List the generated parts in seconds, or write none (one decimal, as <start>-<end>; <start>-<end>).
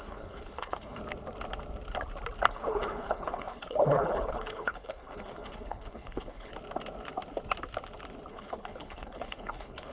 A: 0.0-1.0; 2.5-6.5; 8.3-9.9